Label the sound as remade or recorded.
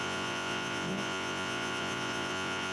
remade